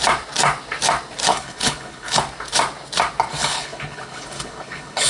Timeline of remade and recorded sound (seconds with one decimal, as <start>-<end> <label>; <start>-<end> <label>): 0.0-1.3 recorded; 1.3-2.2 remade; 2.2-3.4 recorded; 3.4-5.1 remade